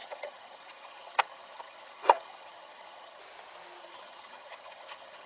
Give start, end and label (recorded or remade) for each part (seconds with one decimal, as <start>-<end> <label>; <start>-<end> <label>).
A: 0.0-3.2 remade; 3.2-3.8 recorded; 3.8-5.3 remade